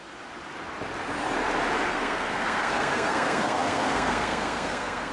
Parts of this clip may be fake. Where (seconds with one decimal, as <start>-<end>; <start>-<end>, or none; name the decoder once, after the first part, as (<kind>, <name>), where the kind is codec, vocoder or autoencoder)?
1.9-5.1 (codec, SNAC)